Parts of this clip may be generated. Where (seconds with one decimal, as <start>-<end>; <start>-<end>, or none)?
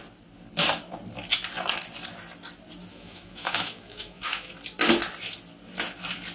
2.9-4.5